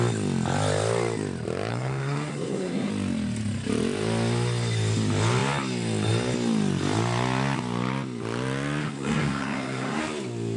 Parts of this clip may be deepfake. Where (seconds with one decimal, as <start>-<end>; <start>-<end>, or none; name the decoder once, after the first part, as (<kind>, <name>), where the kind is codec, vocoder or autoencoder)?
1.7-2.9 (codec, SNAC); 8.8-10.0